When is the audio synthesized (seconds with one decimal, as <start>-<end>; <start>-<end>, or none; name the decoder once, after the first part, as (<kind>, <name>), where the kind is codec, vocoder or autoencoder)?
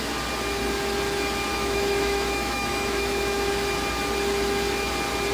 1.5-3.5 (autoencoder, DAC-VAE)